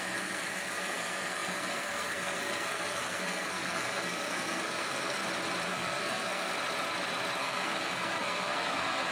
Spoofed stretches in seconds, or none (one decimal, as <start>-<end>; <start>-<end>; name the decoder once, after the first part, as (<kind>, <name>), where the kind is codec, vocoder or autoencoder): 0.0-5.2 (codec, SNAC); 5.7-6.5; 7.4-9.1